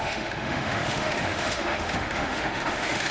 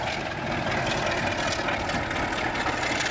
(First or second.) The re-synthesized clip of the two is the first